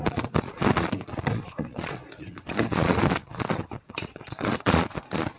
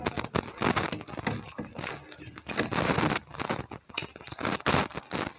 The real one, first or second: second